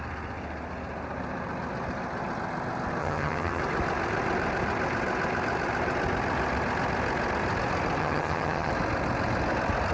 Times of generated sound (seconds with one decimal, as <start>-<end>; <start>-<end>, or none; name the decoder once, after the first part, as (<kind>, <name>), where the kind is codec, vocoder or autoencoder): 3.0-3.6 (vocoder, HiFi-GAN); 8.0-8.7